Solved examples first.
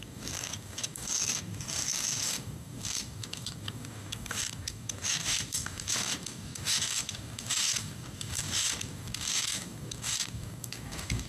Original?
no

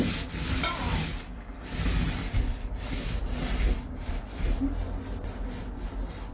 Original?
yes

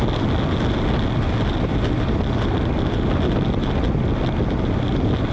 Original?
yes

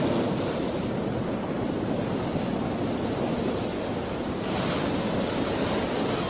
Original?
yes